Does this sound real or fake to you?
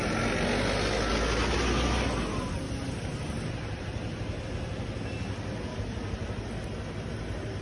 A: real